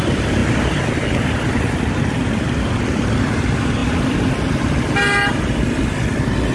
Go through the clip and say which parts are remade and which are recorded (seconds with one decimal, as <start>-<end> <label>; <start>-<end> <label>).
0.0-6.5 recorded